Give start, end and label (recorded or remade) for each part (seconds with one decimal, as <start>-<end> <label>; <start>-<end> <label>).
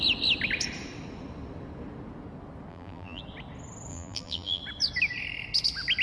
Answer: 0.0-2.7 recorded; 2.7-3.2 remade; 3.2-3.9 recorded; 3.9-4.6 remade; 4.6-6.0 recorded